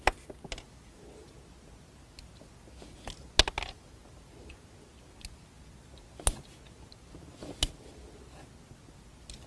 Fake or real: real